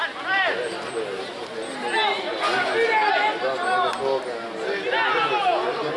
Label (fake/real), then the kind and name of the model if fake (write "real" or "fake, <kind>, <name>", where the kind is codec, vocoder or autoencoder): real